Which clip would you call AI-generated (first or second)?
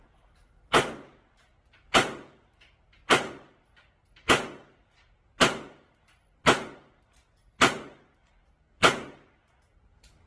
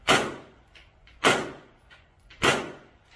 second